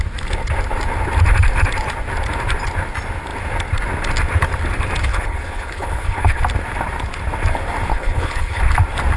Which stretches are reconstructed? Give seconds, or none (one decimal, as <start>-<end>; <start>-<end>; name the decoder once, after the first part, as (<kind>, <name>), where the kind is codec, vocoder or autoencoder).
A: 5.1-6.4 (codec, HILCodec); 7.9-8.6